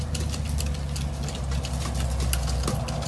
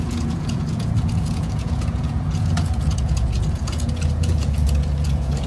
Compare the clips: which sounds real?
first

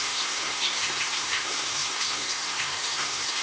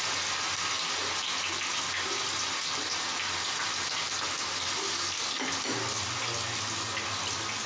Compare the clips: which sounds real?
second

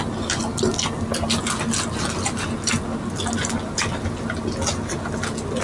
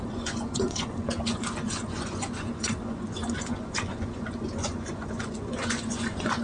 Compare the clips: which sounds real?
first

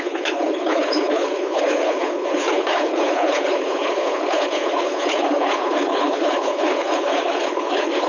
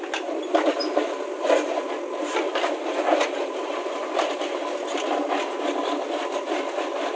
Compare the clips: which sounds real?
second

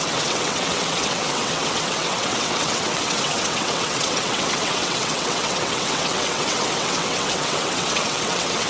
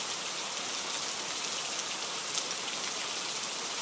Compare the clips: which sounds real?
second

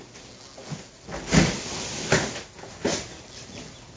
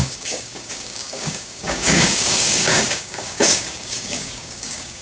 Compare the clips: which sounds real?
first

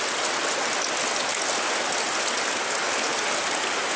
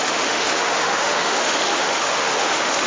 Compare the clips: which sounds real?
first